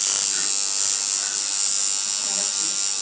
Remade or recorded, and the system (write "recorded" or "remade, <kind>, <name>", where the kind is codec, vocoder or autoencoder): recorded